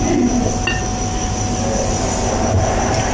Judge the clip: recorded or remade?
recorded